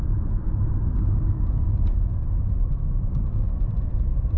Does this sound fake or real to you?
real